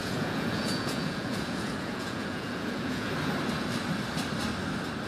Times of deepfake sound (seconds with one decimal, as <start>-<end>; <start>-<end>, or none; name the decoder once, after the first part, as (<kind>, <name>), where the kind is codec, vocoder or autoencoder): 0.0-3.1 (vocoder, Vocos)